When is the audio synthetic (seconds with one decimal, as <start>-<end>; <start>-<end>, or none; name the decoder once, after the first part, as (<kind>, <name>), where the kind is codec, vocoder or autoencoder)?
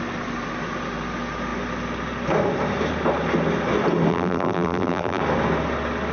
4.1-5.2 (vocoder, BigVGAN v2)